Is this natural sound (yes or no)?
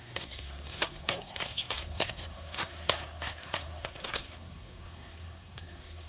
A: no